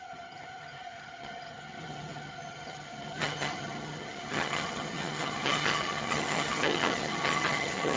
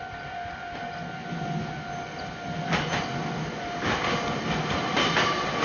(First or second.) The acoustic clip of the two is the second